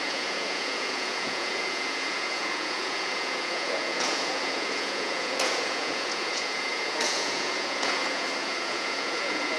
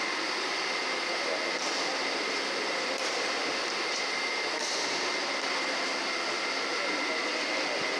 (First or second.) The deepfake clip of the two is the first